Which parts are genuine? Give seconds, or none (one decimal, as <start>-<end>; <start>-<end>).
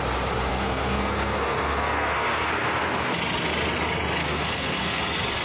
0.0-0.5; 2.5-4.2; 5.0-5.4